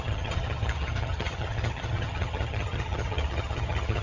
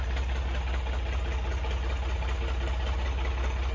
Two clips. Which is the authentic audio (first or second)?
second